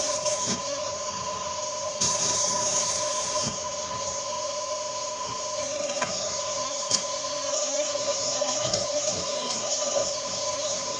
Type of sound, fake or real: fake